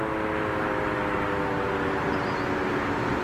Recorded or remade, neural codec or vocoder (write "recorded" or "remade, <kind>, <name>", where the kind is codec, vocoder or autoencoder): recorded